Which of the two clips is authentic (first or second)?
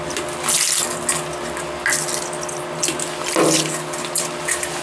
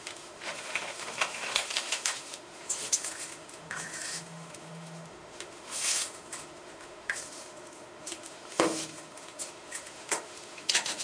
first